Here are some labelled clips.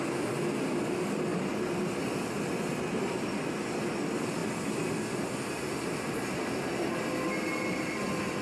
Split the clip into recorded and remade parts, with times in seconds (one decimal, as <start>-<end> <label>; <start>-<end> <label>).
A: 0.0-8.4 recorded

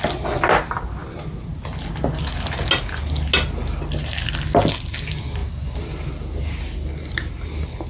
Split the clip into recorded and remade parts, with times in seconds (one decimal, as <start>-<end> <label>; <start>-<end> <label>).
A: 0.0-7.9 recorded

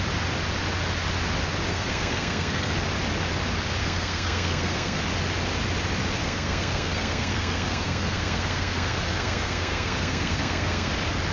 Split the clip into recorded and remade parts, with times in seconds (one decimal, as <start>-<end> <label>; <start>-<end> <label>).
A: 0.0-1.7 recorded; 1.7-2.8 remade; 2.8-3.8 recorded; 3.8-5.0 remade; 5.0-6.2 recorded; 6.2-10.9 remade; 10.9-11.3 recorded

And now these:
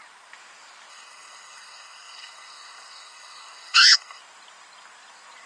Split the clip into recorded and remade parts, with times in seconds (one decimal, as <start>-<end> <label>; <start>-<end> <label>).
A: 0.0-0.9 recorded; 0.9-4.2 remade; 4.2-5.5 recorded

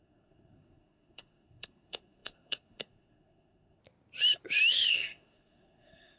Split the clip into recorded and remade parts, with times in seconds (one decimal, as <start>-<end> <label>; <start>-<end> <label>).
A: 0.0-3.8 remade; 3.8-4.9 recorded; 4.9-6.2 remade